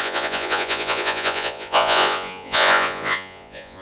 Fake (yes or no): yes